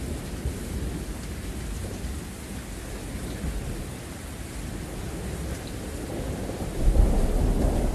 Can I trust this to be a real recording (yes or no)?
yes